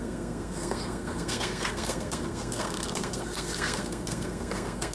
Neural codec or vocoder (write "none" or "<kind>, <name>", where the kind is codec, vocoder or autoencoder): codec, SNAC